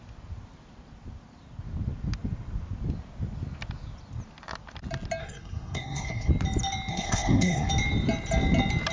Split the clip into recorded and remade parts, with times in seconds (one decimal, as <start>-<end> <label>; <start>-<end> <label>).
0.0-5.2 recorded; 5.2-6.3 remade; 6.3-6.9 recorded; 6.9-7.7 remade; 7.7-8.9 recorded

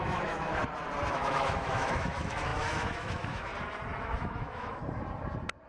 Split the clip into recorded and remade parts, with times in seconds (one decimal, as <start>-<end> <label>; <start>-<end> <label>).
0.0-0.5 remade; 0.5-1.1 recorded; 1.1-3.5 remade; 3.5-4.0 recorded; 4.0-4.8 remade; 4.8-5.7 recorded